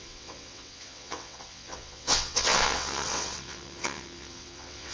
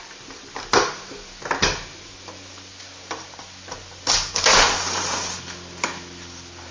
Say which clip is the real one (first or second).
second